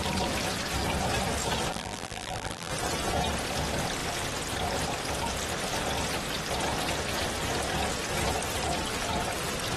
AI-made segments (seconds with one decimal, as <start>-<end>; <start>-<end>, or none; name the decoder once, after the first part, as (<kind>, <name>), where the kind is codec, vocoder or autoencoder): 1.7-2.7 (vocoder, BigVGAN v2)